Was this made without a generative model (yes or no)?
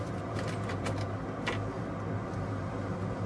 yes